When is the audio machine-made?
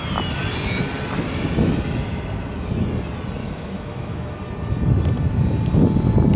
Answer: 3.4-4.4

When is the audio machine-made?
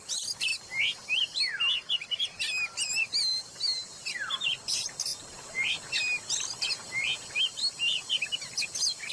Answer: none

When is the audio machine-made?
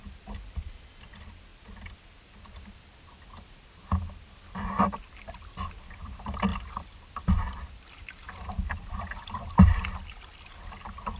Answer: 6.5-10.5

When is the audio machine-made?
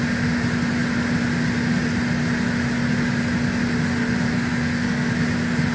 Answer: 4.5-5.1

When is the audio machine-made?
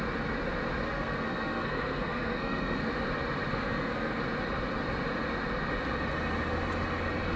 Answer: 0.8-2.9; 3.5-4.2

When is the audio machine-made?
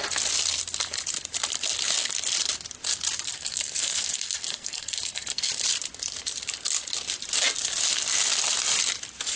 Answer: 3.3-5.5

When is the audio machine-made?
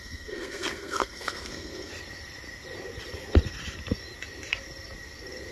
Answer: 0.0-1.9